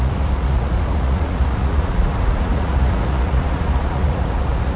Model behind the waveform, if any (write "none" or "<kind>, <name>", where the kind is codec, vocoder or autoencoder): vocoder, Vocos